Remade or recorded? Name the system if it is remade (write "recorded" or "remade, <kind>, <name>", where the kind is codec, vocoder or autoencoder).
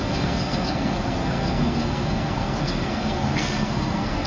remade, codec, SNAC